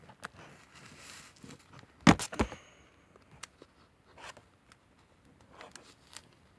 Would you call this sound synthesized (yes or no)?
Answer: no